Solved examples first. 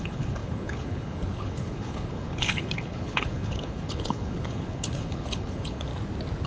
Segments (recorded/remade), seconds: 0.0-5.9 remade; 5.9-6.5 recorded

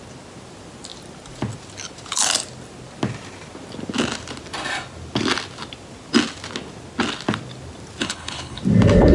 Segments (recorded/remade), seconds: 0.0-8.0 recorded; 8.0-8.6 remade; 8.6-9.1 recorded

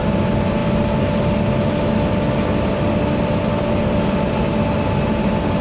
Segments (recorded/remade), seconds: 0.0-5.6 recorded

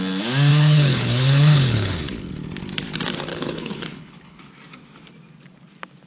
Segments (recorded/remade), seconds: 0.0-0.5 recorded; 0.5-2.3 remade; 2.3-3.3 recorded; 3.3-4.4 remade; 4.4-6.1 recorded

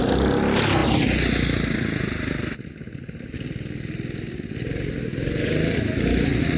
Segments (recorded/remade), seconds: 0.0-6.6 recorded

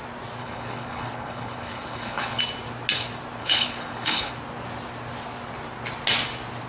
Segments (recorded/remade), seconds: 0.0-0.4 recorded; 0.4-2.4 remade; 2.4-3.4 recorded; 3.4-4.3 remade; 4.3-6.7 recorded

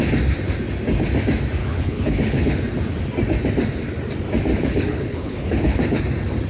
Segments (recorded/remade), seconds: 0.0-1.6 recorded; 1.6-2.6 remade; 2.6-4.5 recorded; 4.5-6.0 remade; 6.0-6.5 recorded

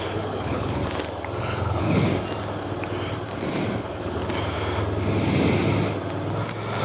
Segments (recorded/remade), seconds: 0.0-0.8 remade; 0.8-1.4 recorded; 1.4-2.1 remade; 2.1-3.8 recorded; 3.8-4.2 remade; 4.2-6.8 recorded